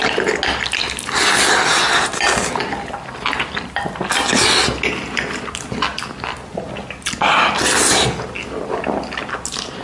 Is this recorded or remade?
recorded